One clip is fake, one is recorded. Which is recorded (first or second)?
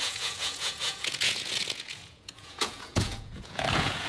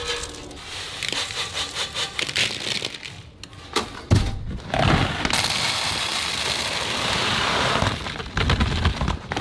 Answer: second